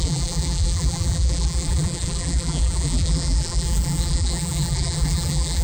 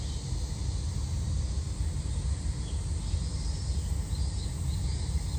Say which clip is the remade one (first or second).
first